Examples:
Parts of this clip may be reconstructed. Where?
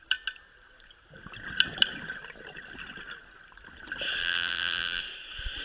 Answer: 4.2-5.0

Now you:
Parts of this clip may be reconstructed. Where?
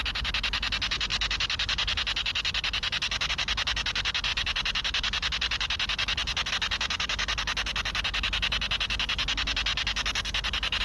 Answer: 1.1-3.3; 4.3-6.5